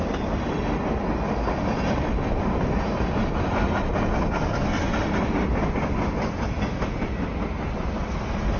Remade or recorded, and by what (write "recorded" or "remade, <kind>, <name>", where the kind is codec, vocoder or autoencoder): recorded